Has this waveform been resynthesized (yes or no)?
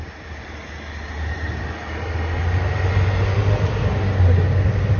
no